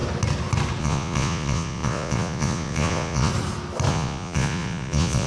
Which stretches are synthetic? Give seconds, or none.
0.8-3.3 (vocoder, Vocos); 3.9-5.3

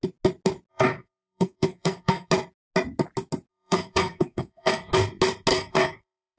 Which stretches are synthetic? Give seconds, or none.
0.7-2.3 (codec, SNAC); 3.5-4.9; 5.5-6.4